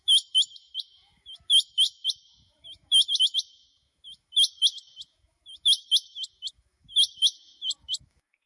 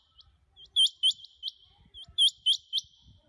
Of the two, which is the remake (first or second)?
first